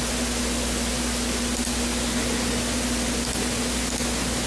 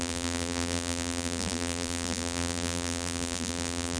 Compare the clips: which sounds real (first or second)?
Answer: first